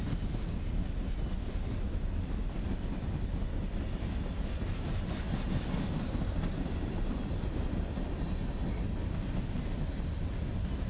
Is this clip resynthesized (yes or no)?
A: no